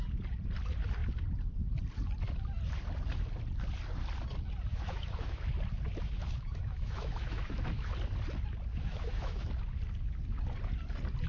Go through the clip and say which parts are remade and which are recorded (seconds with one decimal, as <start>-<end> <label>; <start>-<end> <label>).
0.0-4.7 recorded; 4.7-5.5 remade; 5.5-6.0 recorded; 6.0-7.9 remade; 7.9-8.7 recorded; 8.7-9.5 remade; 9.5-11.3 recorded